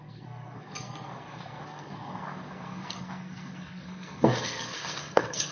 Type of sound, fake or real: fake